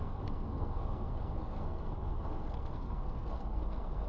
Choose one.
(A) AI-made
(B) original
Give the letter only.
A